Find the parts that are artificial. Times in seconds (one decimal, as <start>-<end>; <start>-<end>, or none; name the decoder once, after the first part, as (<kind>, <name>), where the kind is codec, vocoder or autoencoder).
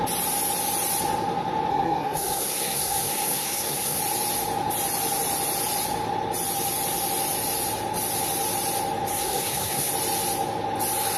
1.7-4.0 (codec, SNAC); 9.1-9.9